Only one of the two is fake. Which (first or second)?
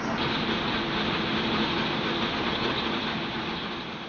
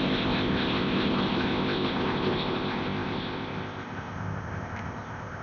second